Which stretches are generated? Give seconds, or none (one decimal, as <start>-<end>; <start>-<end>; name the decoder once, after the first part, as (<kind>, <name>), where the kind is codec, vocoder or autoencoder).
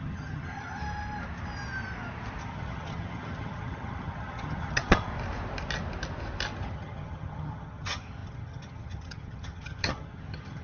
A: 0.0-0.8 (vocoder, HiFi-GAN); 2.4-5.1; 6.7-10.6